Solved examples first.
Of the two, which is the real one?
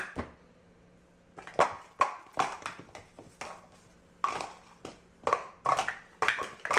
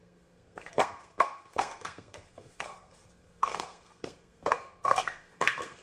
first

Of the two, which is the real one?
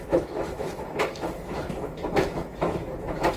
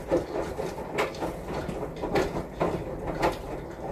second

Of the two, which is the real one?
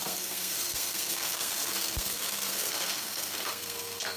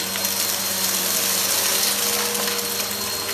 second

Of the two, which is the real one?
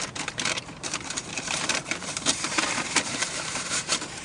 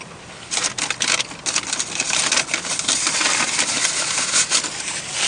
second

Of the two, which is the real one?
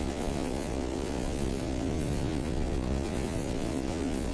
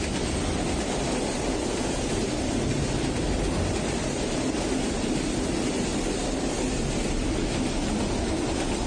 second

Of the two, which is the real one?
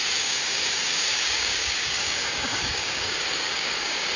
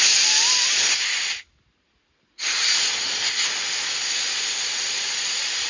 second